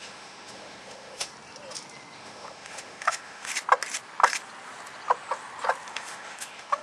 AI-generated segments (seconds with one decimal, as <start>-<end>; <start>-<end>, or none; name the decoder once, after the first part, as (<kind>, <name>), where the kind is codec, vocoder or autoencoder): 0.0-1.3 (autoencoder, DAC-VAE); 2.2-3.5; 5.9-6.8